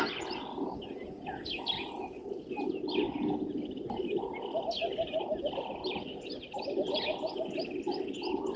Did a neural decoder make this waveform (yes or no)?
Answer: no